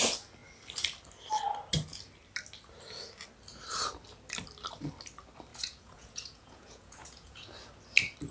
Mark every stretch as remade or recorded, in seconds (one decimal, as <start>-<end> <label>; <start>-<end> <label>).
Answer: 0.0-5.5 recorded; 5.5-7.5 remade; 7.5-8.3 recorded